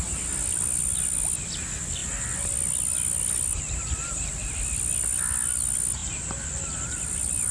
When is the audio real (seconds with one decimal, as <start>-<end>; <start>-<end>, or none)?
0.0-7.5